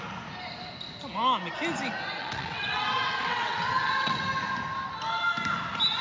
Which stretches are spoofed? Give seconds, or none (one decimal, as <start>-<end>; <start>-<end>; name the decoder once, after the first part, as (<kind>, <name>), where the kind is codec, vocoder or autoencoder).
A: 2.2-4.2 (vocoder, WaveNeXt)